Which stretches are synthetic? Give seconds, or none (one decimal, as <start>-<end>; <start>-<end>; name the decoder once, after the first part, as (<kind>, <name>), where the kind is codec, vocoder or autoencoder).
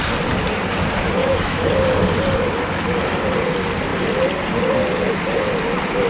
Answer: 1.2-1.7 (autoencoder, DAC-VAE)